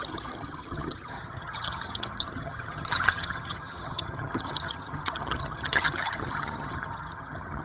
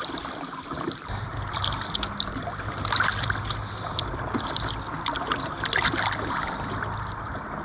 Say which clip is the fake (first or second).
first